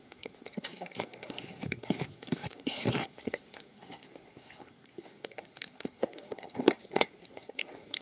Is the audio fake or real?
fake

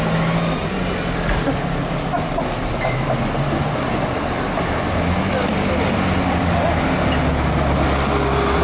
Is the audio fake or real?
real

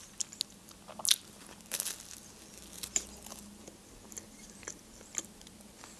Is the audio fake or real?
real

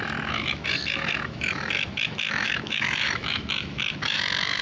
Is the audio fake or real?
fake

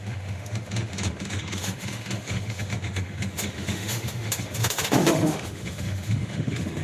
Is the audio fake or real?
fake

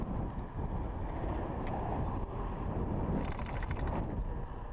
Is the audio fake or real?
real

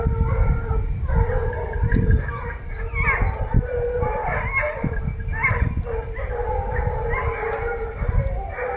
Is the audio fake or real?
real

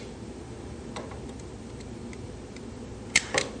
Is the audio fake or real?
fake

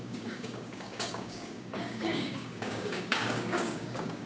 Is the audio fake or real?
fake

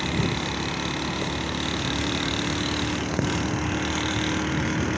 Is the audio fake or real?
real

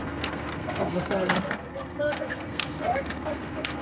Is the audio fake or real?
fake